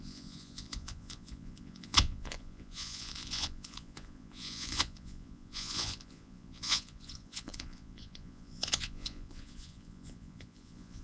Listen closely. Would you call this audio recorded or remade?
remade